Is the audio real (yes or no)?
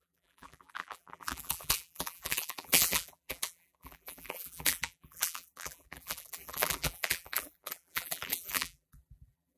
no